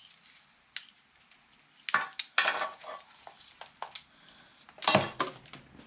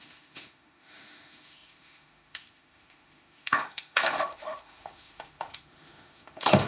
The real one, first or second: first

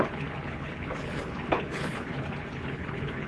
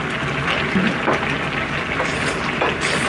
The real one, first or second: second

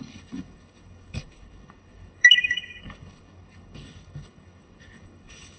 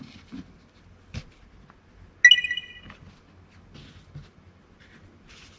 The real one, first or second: second